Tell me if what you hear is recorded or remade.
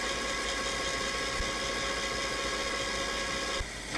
recorded